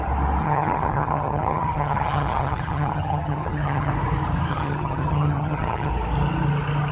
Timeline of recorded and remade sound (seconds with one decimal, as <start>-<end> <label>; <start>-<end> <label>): 0.0-0.4 recorded; 0.4-3.9 remade; 3.9-4.5 recorded; 4.5-5.9 remade; 5.9-6.9 recorded

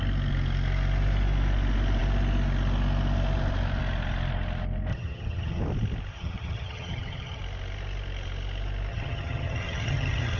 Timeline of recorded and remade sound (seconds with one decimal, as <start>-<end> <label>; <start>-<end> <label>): 0.0-4.9 recorded; 4.9-5.6 remade; 5.6-6.1 recorded; 6.1-7.4 remade; 7.4-8.9 recorded; 8.9-10.4 remade

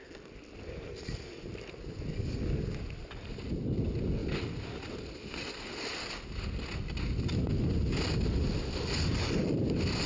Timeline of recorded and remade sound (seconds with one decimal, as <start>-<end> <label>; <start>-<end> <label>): 0.0-10.1 recorded